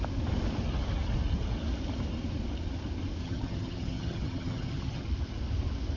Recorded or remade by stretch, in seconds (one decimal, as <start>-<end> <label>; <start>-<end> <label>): 0.0-3.2 recorded; 3.2-5.0 remade; 5.0-6.0 recorded